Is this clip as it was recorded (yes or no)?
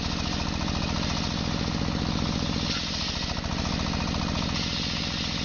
yes